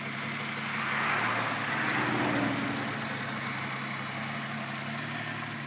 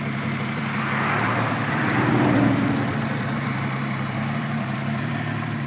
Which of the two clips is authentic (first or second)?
first